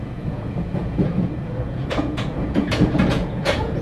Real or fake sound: fake